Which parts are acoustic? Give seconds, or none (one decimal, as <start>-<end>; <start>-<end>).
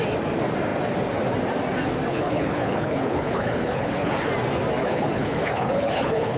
0.0-2.1; 4.3-4.8